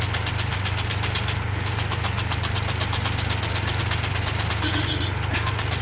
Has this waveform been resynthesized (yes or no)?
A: no